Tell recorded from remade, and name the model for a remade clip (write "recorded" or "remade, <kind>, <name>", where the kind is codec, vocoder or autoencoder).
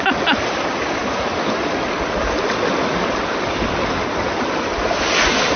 recorded